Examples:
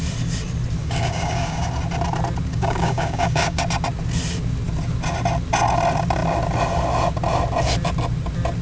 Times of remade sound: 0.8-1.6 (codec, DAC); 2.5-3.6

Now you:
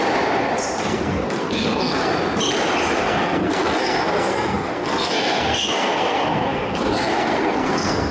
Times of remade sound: 0.9-2.1 (codec, SNAC); 3.0-8.1

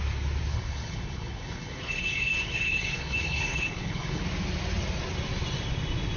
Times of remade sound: 0.5-4.2 (codec, HILCodec)

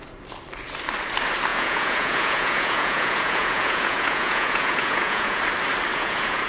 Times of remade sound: 1.5-5.4 (vocoder, Vocos); 5.9-6.5

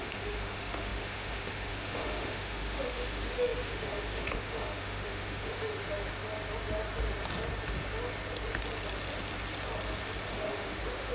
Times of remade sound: 0.0-5.7 (autoencoder, DAC-VAE); 10.3-11.1

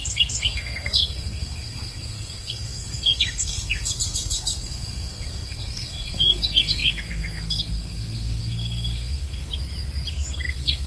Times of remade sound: 0.0-9.5 (codec, SNAC); 10.1-10.9

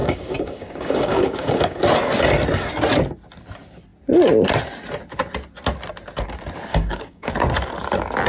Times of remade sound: 0.0-1.8 (codec, DAC); 6.7-7.3